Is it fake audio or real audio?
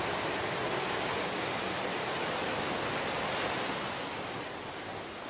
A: real